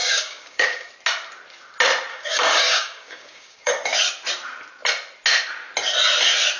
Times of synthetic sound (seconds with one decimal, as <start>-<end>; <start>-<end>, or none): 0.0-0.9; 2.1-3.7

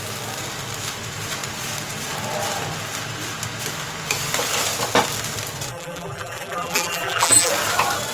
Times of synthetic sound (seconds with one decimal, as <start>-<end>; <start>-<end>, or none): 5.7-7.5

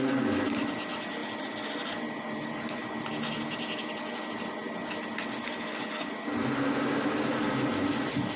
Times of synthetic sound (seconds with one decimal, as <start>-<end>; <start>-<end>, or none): 0.0-4.6; 7.4-8.4

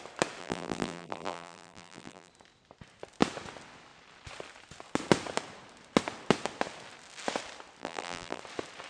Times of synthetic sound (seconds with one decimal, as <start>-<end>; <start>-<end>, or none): 0.4-2.3; 7.8-8.4

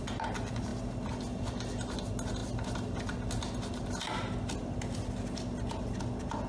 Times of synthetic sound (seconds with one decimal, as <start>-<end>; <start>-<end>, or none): none